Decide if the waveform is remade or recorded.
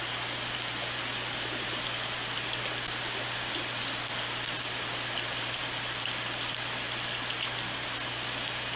recorded